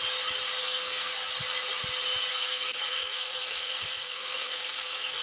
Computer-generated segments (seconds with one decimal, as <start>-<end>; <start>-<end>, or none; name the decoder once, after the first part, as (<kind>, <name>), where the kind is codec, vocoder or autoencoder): 0.6-1.1 (codec, SNAC); 2.3-5.2